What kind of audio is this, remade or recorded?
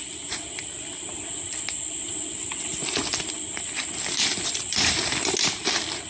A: recorded